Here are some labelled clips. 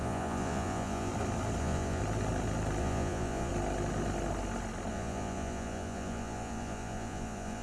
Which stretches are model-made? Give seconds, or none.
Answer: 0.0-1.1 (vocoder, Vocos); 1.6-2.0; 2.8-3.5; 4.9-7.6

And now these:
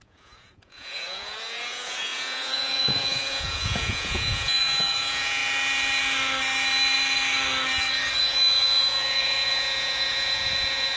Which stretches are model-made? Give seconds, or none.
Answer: 0.0-5.4 (vocoder, Vocos); 8.2-11.0

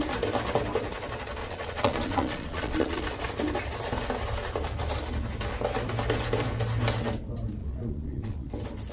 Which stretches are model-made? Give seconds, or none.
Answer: 1.4-3.0 (vocoder, Vocos); 7.6-8.5